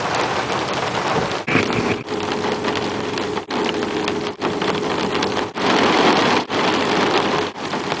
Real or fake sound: real